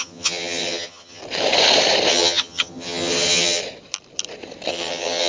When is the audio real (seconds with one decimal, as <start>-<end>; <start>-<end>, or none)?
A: 1.2-2.1; 3.6-4.7